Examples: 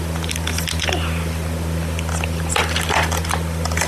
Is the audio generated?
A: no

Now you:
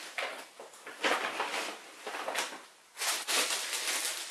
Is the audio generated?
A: no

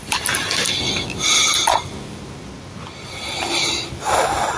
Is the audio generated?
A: no